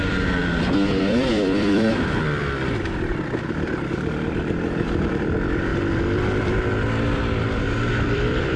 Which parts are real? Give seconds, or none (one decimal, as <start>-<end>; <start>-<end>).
0.4-1.0; 5.7-7.9